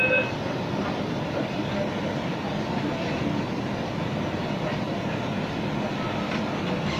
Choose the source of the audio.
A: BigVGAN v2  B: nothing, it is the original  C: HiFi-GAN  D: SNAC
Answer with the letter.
B